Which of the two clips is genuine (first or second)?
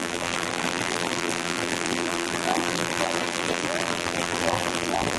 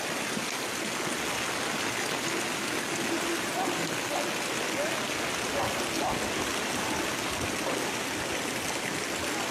second